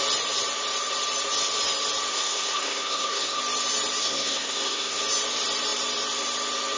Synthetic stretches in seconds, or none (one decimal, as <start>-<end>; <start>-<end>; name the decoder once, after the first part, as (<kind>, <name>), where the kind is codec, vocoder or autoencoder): 2.1-3.4 (codec, SNAC); 4.0-5.0